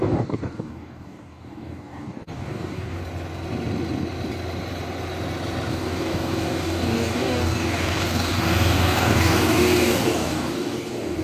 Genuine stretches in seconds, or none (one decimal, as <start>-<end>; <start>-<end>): 3.0-5.7